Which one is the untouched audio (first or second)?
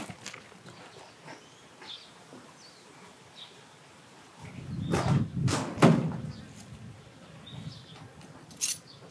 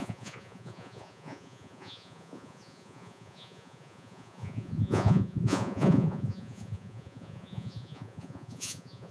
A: first